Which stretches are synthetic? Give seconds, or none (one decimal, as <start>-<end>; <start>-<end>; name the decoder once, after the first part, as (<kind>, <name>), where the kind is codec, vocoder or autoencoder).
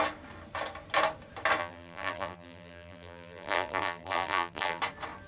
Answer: 1.6-4.8 (vocoder, BigVGAN v2)